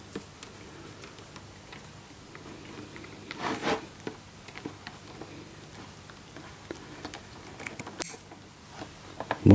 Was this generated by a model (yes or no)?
no